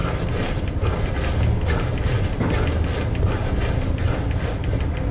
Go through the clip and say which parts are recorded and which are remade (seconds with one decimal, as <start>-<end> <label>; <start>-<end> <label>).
0.0-5.1 recorded